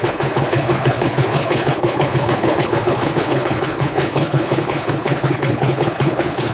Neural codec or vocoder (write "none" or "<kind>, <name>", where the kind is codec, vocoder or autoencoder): codec, HILCodec